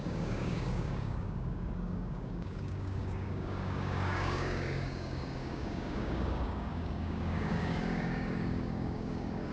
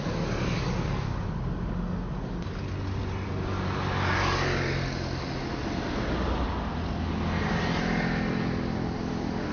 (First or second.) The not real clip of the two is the first